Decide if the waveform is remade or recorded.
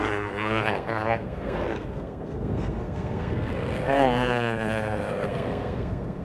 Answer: remade